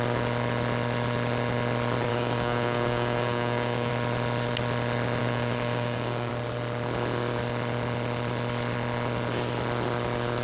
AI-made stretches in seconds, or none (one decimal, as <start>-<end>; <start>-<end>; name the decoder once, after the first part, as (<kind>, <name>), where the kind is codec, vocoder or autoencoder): 2.1-3.9 (codec, DAC); 5.2-6.3